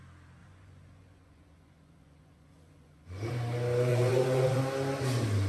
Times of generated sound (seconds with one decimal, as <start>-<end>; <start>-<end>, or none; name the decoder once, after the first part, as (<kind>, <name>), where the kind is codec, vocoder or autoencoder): 0.4-3.3 (vocoder, Vocos); 3.9-4.6